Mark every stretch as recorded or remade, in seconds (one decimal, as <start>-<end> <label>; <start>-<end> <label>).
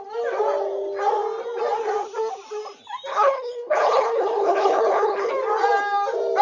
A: 0.0-3.1 recorded; 3.1-5.3 remade; 5.3-6.4 recorded